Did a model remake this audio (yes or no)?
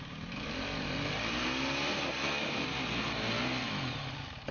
no